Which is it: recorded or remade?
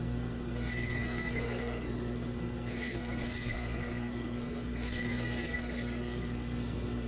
remade